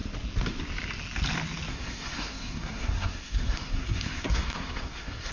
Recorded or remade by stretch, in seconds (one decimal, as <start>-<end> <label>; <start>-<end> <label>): 0.0-1.7 recorded; 1.7-5.3 remade